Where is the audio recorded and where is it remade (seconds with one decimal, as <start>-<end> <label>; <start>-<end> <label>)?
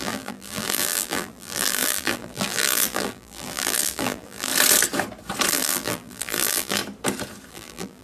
0.0-4.5 remade; 4.5-5.5 recorded; 5.5-6.8 remade; 6.8-7.5 recorded; 7.5-8.0 remade